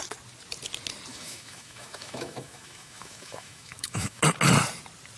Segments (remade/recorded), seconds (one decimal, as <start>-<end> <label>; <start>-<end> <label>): 0.0-1.1 recorded; 1.1-4.2 remade; 4.2-5.2 recorded